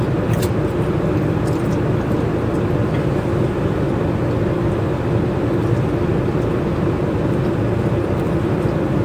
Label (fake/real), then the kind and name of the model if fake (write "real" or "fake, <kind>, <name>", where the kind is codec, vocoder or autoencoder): real